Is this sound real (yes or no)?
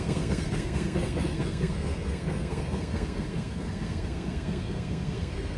no